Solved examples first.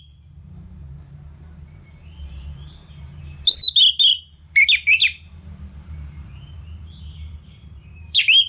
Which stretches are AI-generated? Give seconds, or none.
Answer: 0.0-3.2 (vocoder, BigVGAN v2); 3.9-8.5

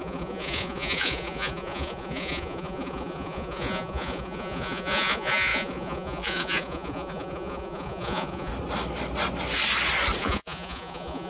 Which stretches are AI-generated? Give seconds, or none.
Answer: 0.0-8.5 (vocoder, Vocos); 10.2-11.3

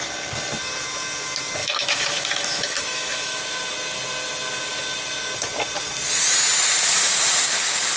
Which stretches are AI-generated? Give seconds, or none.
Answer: 1.6-3.4 (autoencoder, DAC-VAE)

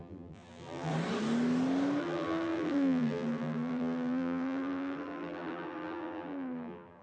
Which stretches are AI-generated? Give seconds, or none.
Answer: 0.0-0.9 (vocoder, BigVGAN v2); 2.0-7.0

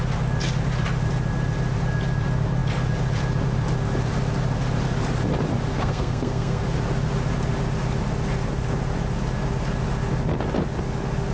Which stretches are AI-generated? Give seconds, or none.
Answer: 5.7-6.6 (codec, SNAC)

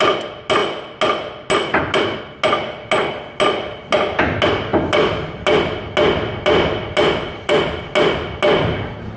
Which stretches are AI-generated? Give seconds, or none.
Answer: none

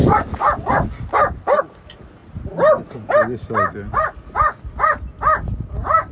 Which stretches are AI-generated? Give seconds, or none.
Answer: 0.0-1.6 (vocoder, BigVGAN v2)